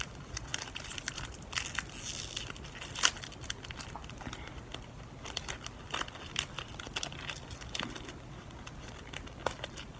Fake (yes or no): no